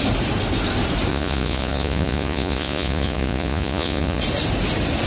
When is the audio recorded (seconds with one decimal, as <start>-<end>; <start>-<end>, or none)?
0.0-1.1; 4.2-5.1